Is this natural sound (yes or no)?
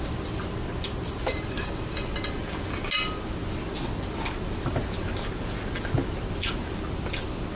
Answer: yes